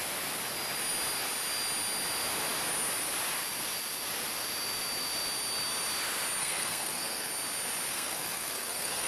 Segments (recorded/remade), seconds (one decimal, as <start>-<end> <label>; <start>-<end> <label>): 0.0-6.4 recorded; 6.4-7.3 remade; 7.3-7.9 recorded; 7.9-9.1 remade